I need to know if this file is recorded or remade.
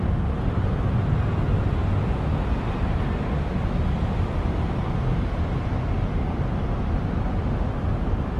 recorded